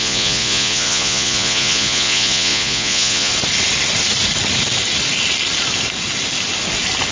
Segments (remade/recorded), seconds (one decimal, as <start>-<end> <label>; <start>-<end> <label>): 0.0-3.3 remade; 3.3-7.1 recorded